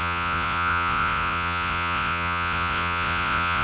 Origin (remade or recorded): remade